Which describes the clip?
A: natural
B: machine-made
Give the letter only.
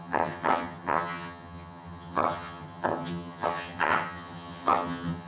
B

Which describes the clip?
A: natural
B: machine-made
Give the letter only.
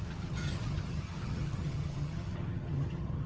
B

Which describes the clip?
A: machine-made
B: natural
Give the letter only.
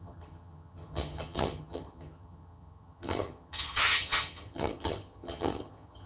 A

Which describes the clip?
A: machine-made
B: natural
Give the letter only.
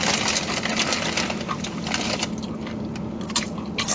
B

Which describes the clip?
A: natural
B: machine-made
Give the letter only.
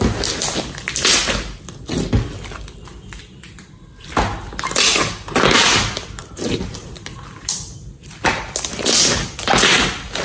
A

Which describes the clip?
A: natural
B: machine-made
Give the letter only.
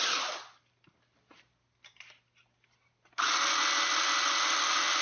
A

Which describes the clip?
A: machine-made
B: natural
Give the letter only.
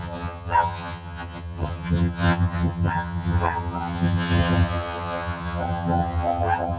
A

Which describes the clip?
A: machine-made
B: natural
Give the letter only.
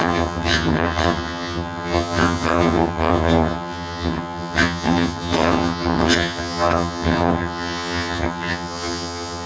A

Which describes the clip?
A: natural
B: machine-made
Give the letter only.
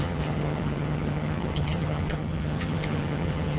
B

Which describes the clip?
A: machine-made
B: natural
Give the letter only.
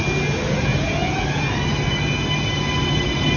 B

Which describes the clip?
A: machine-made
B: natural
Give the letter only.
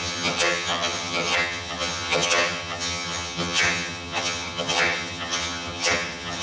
A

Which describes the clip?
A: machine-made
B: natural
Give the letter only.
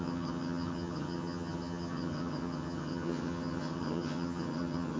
A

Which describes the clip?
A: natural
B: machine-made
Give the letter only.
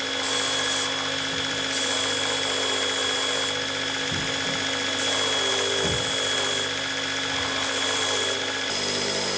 A